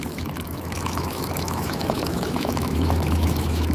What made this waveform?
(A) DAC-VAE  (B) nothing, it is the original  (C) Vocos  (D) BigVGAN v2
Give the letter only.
A